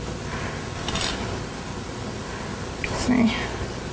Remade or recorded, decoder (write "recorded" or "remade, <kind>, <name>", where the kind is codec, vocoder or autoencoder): recorded